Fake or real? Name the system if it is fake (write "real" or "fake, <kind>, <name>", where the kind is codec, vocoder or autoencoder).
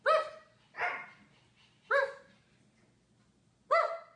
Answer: real